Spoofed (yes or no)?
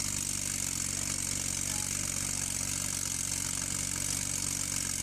no